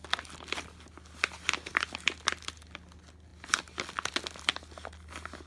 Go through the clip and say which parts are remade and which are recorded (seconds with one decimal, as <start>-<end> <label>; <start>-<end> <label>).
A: 0.0-5.5 recorded